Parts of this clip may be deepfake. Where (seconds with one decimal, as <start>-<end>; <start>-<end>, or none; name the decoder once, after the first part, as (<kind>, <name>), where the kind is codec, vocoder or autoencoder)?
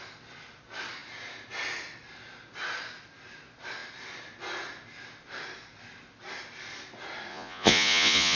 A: 7.3-8.4 (vocoder, Vocos)